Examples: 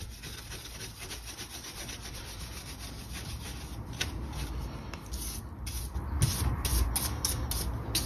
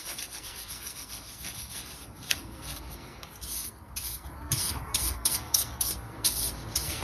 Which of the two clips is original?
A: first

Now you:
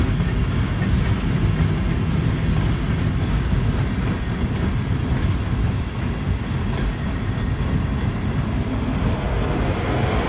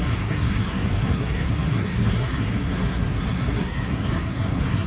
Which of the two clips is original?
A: first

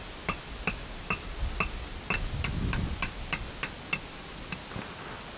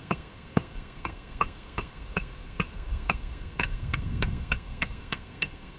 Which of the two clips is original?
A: first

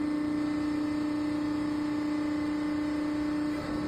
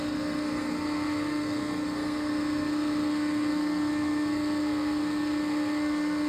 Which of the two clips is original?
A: first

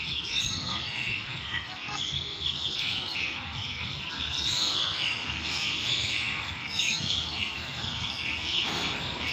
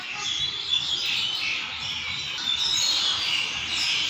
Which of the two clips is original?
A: second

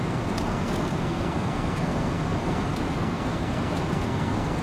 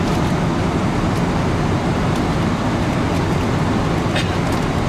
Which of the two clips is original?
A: second